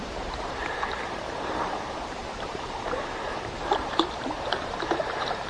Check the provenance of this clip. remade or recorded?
remade